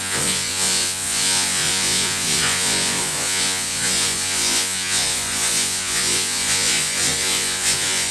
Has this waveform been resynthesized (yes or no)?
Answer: yes